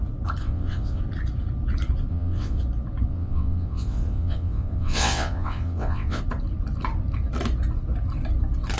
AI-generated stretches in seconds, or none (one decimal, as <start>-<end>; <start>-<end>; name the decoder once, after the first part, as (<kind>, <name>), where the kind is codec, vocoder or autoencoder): 0.4-1.0 (vocoder, WaveNeXt); 2.1-2.6; 3.1-6.2